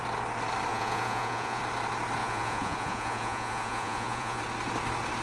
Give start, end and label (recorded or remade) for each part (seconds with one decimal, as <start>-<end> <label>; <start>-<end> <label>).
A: 0.0-0.7 recorded; 0.7-1.6 remade; 1.6-2.2 recorded; 2.2-4.4 remade; 4.4-5.2 recorded